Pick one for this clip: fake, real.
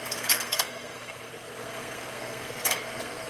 fake